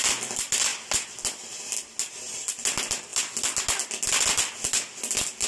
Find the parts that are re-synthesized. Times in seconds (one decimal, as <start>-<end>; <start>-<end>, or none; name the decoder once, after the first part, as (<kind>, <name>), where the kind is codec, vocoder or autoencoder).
0.7-2.1 (vocoder, BigVGAN v2)